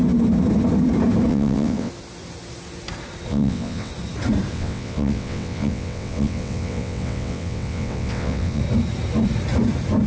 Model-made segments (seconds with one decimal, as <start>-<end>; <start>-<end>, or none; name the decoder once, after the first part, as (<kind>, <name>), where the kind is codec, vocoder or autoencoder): 1.3-1.9 (vocoder, WaveNeXt); 3.3-3.9; 4.5-8.6